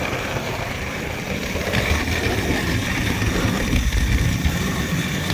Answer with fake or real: fake